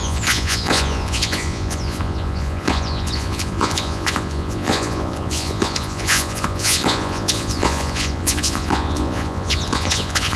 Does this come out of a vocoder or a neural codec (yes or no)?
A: yes